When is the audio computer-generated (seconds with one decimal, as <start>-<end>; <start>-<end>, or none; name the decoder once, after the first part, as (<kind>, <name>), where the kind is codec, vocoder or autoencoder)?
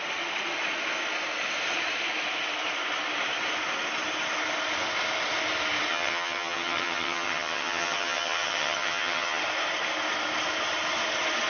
5.9-9.4 (vocoder, HiFi-GAN)